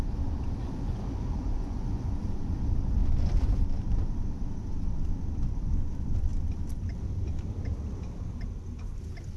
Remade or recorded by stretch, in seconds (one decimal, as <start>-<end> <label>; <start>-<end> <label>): 0.0-0.6 recorded; 0.6-2.1 remade; 2.1-9.4 recorded